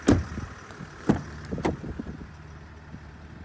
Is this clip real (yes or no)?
yes